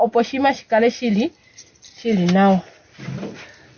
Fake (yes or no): no